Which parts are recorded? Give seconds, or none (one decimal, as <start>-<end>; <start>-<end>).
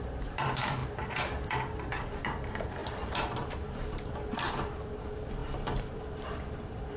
none